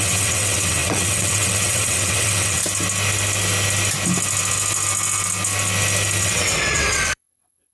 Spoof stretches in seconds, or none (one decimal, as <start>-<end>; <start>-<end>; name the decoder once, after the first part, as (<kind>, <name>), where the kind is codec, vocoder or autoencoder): 0.0-2.6 (vocoder, WaveNeXt); 6.2-7.7